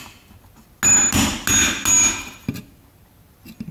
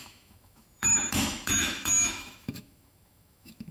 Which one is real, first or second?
first